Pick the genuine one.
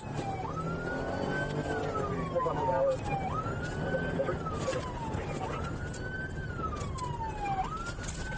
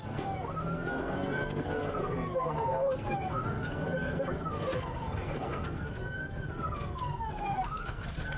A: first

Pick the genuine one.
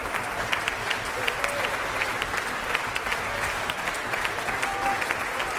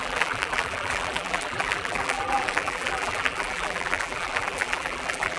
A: first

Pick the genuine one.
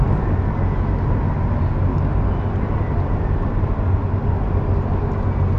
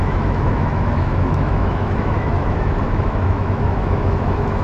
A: first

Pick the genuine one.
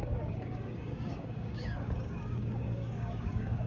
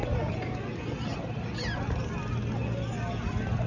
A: second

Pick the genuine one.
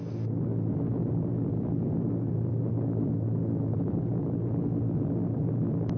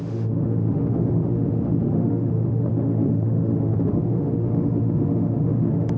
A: first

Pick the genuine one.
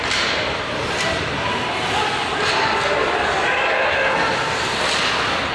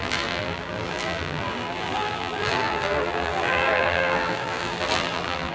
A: first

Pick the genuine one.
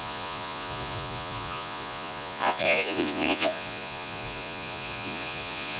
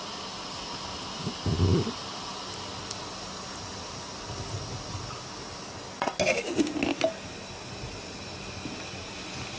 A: second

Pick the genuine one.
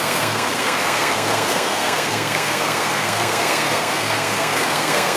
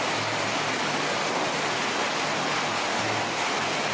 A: second